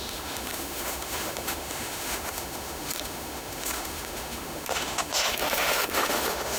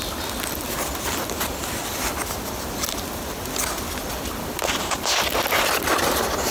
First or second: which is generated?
first